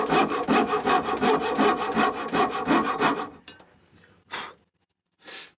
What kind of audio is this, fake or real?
fake